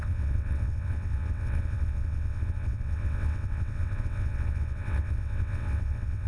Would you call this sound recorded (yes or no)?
no